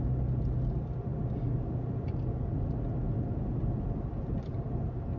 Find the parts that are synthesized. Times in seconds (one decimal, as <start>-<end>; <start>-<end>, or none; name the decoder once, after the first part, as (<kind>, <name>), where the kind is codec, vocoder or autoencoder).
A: none